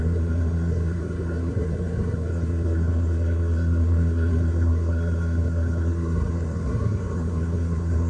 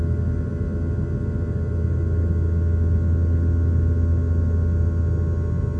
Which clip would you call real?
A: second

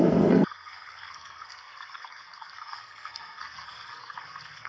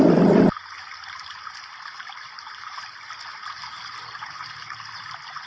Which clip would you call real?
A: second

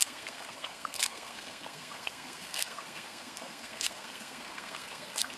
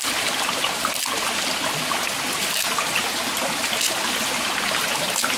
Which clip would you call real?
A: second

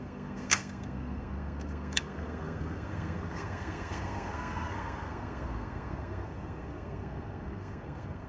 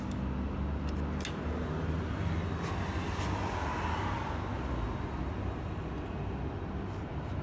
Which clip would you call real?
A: second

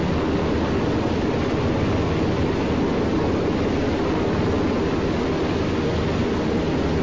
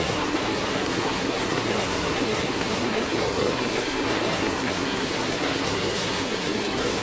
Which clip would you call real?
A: first